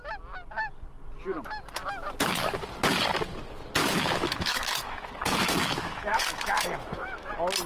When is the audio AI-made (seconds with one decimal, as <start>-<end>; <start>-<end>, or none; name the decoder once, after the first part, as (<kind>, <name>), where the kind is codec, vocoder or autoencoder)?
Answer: 3.8-7.3 (autoencoder, DAC-VAE)